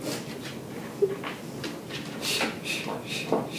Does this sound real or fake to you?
real